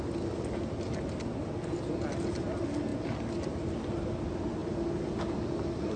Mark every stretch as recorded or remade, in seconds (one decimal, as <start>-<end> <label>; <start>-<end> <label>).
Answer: 0.0-6.0 recorded